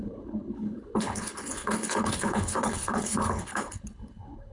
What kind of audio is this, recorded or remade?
remade